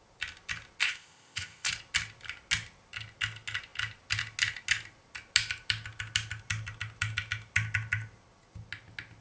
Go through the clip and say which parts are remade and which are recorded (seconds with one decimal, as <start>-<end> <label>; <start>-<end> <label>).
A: 0.0-0.8 recorded; 0.8-1.7 remade; 1.7-9.2 recorded